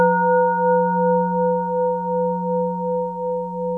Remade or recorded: recorded